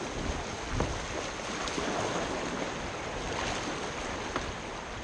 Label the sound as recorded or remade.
recorded